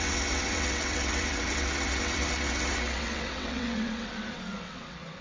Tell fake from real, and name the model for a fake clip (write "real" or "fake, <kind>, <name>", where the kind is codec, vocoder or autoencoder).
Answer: fake, vocoder, WaveNeXt